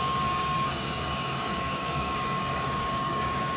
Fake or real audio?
fake